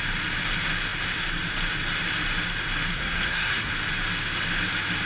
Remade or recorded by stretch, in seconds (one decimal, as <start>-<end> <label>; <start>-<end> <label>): 0.0-2.9 recorded; 2.9-3.7 remade; 3.7-5.1 recorded

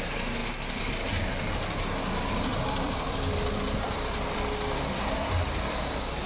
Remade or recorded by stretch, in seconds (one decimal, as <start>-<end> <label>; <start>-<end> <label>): 0.0-0.4 recorded; 0.4-1.8 remade; 1.8-2.5 recorded; 2.5-5.8 remade; 5.8-6.3 recorded

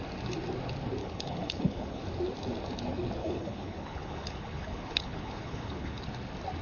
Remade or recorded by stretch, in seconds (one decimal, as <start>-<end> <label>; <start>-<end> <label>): 0.0-1.0 recorded; 1.0-2.0 remade; 2.0-3.2 recorded; 3.2-6.0 remade; 6.0-6.6 recorded

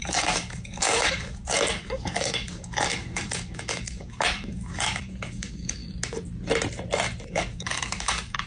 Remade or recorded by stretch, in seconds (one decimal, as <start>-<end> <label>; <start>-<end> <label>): 0.0-5.8 remade; 5.8-7.3 recorded; 7.3-8.5 remade

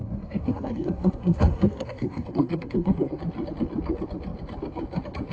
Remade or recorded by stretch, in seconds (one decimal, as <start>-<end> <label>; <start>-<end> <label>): 0.0-3.2 remade; 3.2-5.3 recorded

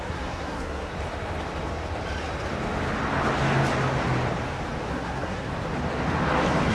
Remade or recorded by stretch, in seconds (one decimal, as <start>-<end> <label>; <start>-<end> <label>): 0.0-0.9 remade; 0.9-4.9 recorded; 4.9-5.5 remade; 5.5-6.7 recorded

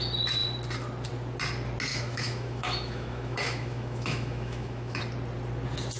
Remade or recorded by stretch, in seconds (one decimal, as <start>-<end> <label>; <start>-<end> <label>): 0.0-1.9 recorded; 1.9-5.0 remade; 5.0-6.0 recorded